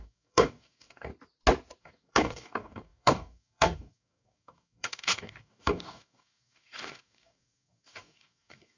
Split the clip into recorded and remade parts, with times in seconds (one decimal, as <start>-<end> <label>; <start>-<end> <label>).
0.0-1.1 remade; 1.1-1.8 recorded; 1.8-8.8 remade